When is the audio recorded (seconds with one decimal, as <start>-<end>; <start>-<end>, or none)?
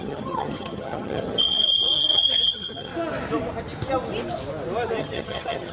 2.9-5.0